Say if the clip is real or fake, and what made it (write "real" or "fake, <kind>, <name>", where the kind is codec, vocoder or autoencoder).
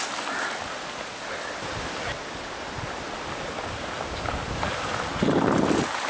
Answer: real